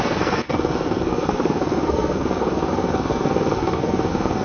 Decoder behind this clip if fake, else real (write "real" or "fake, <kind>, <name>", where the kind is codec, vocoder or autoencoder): fake, codec, SNAC